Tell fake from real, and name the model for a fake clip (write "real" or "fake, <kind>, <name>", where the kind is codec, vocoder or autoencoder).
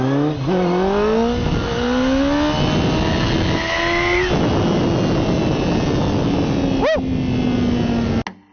real